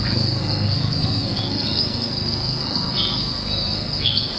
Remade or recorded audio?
remade